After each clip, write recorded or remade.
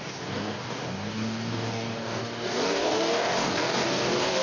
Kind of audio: remade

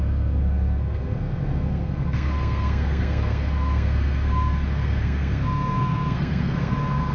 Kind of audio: remade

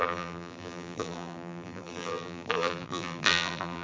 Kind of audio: remade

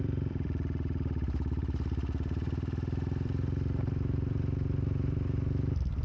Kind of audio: remade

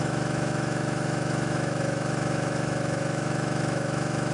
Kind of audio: remade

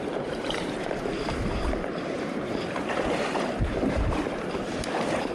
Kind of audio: remade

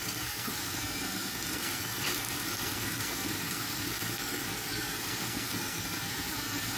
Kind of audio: remade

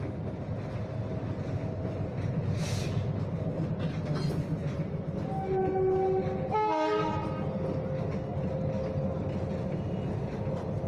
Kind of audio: recorded